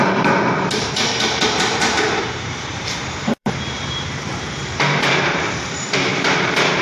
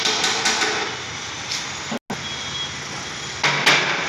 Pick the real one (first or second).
second